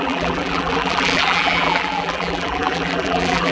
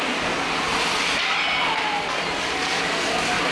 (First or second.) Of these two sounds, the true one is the second